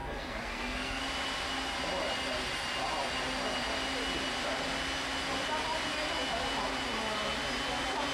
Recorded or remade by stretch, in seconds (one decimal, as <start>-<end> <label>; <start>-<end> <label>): 0.0-1.0 remade; 1.0-8.1 recorded